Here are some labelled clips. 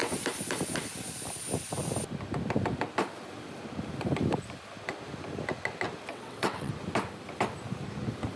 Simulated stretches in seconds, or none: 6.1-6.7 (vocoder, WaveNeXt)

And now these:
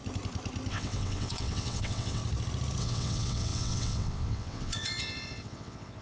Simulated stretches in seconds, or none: 0.7-2.2 (vocoder, WaveNeXt); 2.8-6.0

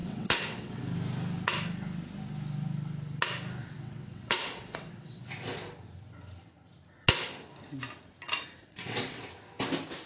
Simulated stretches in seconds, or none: 0.0-0.8 (vocoder, WaveNeXt); 3.6-5.2; 8.6-9.2

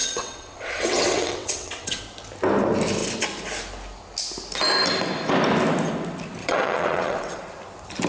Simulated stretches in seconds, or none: 0.0-2.0 (vocoder, WaveNeXt); 6.4-7.4